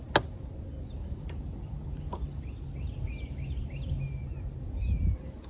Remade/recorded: recorded